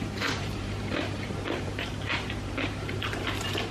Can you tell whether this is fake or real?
fake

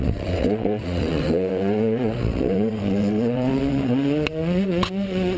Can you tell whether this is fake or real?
fake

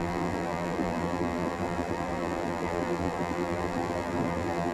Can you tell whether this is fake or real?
fake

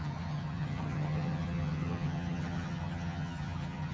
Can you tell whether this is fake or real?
fake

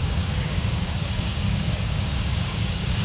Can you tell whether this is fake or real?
fake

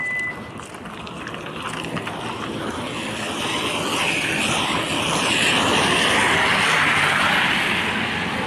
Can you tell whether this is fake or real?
real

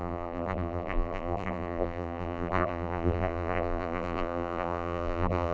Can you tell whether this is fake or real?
fake